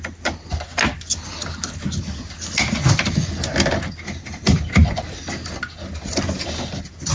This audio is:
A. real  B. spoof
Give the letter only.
A